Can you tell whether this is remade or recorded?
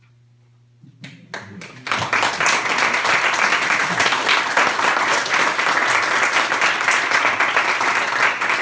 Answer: recorded